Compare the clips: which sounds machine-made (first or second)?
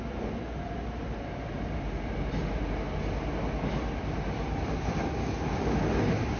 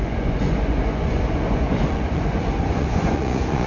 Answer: second